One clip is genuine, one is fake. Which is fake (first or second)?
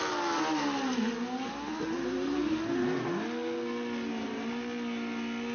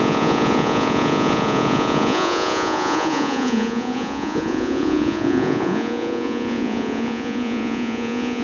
second